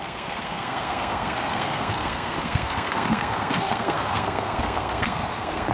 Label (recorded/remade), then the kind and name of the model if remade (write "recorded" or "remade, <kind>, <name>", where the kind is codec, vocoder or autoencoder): remade, codec, SNAC